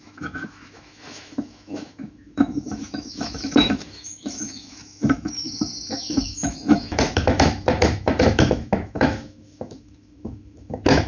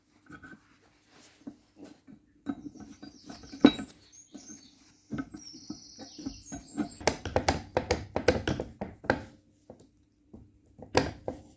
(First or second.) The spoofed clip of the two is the first